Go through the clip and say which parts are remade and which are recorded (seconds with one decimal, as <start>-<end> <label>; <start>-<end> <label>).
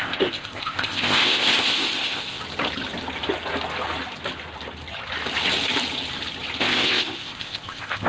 0.0-2.4 remade; 2.4-6.6 recorded; 6.6-8.1 remade